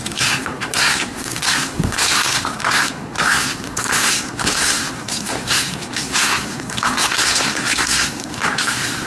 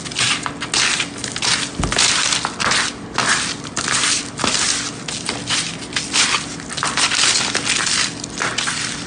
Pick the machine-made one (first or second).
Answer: first